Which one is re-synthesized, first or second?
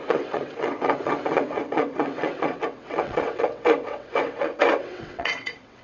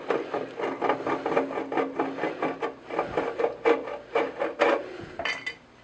first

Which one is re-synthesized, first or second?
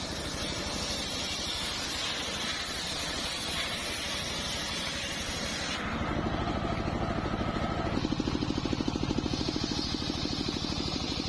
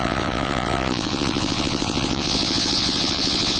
second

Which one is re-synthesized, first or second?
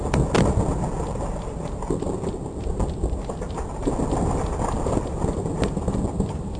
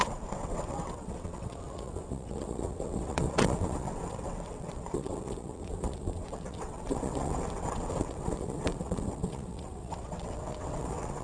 second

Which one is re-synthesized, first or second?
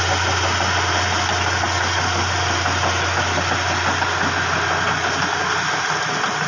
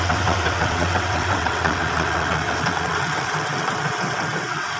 second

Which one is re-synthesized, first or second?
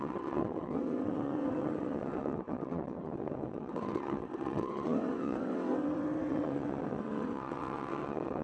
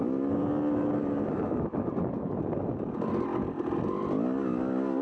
first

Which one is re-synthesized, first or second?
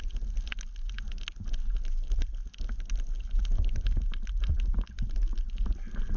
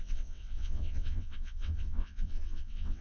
second